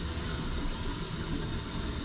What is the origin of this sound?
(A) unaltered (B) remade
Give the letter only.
A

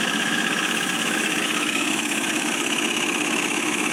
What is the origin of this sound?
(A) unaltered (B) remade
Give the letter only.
B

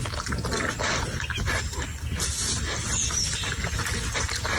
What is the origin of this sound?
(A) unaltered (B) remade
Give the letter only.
A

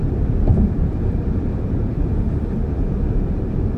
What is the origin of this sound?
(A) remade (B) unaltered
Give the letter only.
A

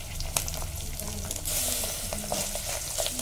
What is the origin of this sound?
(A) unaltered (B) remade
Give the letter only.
A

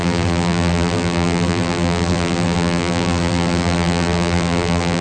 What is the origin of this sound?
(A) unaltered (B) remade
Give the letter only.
B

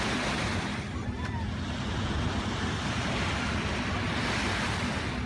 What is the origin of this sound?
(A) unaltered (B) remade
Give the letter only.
A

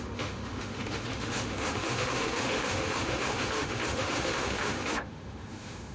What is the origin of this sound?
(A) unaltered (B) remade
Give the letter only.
B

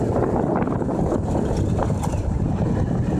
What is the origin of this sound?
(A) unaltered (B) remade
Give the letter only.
A